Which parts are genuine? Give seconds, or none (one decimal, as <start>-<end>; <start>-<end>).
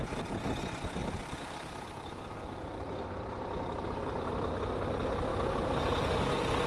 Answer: 0.0-1.0; 4.3-6.7